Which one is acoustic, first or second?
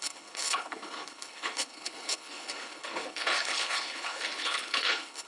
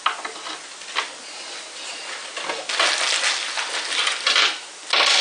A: second